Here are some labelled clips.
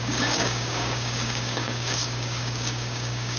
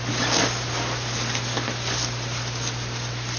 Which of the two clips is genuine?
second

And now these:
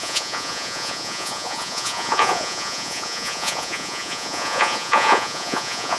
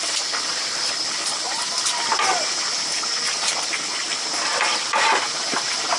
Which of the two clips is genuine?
second